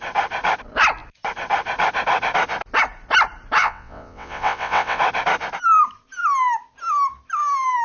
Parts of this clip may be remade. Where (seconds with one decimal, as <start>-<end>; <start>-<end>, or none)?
3.6-5.0